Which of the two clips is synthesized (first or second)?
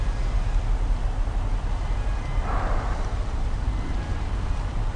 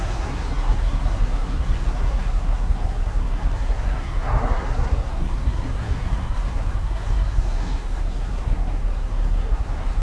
second